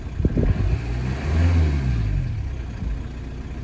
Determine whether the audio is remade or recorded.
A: recorded